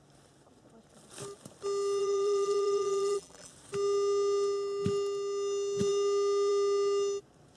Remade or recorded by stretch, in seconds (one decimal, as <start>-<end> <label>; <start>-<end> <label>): 0.0-2.0 recorded; 2.0-3.5 remade; 3.5-7.6 recorded